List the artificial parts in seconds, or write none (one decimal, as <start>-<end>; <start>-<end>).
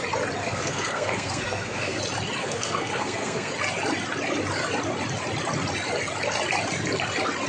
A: 0.4-2.0; 2.4-3.5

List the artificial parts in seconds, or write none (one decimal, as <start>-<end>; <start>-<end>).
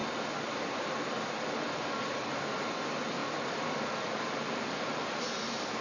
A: 3.2-5.8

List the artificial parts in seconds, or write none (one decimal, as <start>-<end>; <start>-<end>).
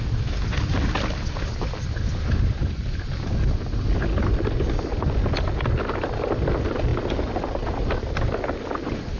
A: none